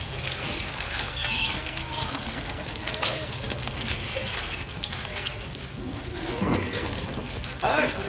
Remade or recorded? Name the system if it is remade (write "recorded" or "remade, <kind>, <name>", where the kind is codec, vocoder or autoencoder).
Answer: remade, codec, SNAC